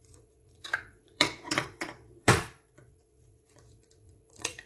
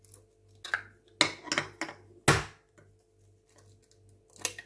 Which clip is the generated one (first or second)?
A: first